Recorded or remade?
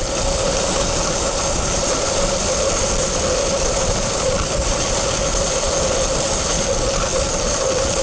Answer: recorded